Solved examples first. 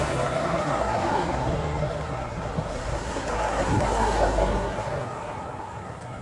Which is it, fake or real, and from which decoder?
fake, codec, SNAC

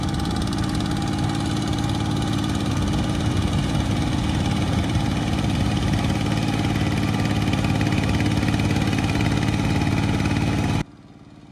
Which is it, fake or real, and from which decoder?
real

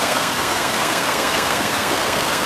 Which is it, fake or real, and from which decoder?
fake, codec, SNAC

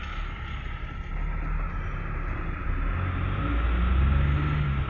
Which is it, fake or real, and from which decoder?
real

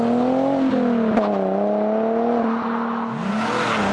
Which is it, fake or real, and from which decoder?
real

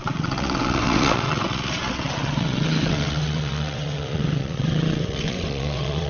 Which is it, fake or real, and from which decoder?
fake, vocoder, WaveNeXt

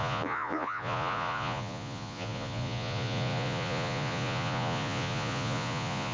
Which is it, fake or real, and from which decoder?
fake, vocoder, Vocos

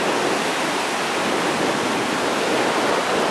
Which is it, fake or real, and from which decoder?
real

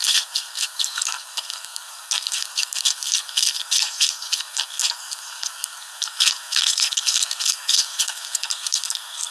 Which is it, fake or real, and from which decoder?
fake, codec, SNAC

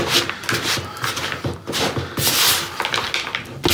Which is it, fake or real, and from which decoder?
real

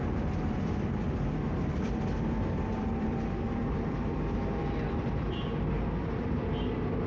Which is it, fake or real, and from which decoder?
fake, vocoder, BigVGAN v2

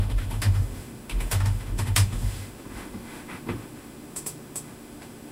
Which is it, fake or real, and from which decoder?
fake, autoencoder, DAC-VAE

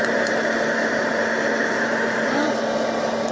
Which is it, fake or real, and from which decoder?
real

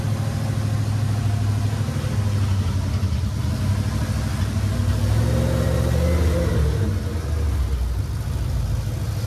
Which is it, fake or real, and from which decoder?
real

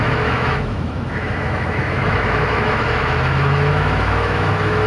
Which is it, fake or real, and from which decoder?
fake, autoencoder, DAC-VAE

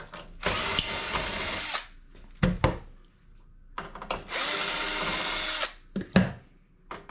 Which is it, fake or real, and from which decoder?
real